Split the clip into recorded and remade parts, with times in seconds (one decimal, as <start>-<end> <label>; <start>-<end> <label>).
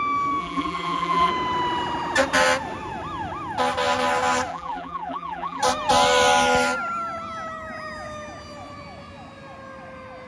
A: 0.0-0.4 recorded; 0.4-1.3 remade; 1.3-4.5 recorded; 4.5-5.6 remade; 5.6-10.3 recorded